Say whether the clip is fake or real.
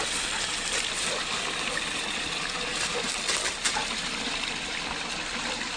real